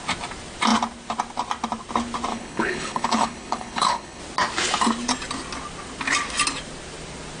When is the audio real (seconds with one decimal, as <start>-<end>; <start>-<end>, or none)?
0.0-2.3; 4.2-7.4